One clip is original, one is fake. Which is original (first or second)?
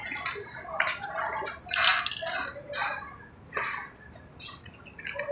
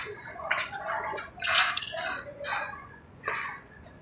first